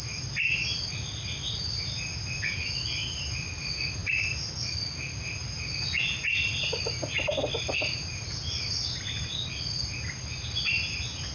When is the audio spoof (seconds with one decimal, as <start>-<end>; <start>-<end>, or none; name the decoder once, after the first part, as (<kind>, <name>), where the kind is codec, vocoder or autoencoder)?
none